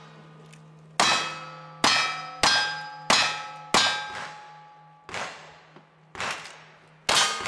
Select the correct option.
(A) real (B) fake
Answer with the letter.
A